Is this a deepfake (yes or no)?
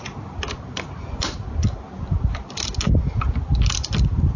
no